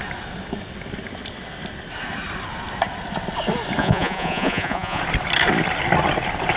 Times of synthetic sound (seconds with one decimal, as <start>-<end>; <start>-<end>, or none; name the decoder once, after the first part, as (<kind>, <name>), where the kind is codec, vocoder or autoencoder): 3.8-5.0 (vocoder, Vocos)